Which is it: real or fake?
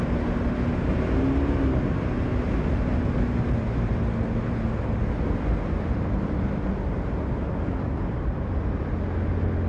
real